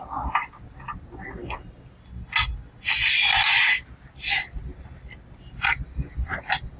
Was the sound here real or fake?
real